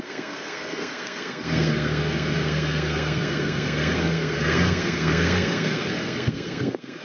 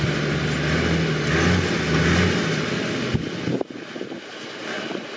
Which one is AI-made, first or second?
first